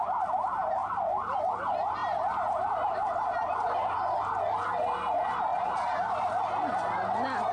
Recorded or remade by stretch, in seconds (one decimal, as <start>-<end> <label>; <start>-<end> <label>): 0.0-7.5 recorded